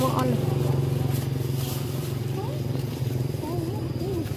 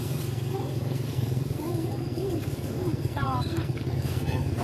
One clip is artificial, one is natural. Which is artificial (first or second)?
second